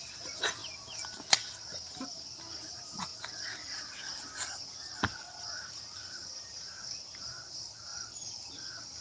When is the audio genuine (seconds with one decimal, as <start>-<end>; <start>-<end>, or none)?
0.6-2.7; 3.1-5.7